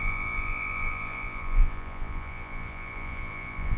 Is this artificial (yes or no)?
yes